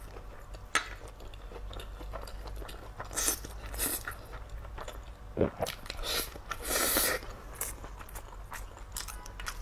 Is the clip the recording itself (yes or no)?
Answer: yes